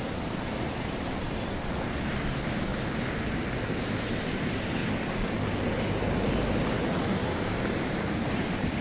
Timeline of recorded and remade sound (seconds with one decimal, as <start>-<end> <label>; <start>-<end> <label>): 0.0-2.7 remade; 2.7-4.0 recorded; 4.0-4.8 remade; 4.8-7.4 recorded; 7.4-8.8 remade